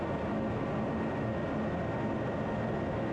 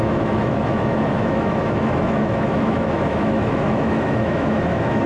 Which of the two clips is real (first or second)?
first